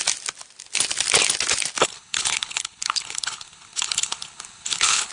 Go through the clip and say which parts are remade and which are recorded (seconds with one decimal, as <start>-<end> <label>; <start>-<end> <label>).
0.0-1.8 recorded; 1.8-5.1 remade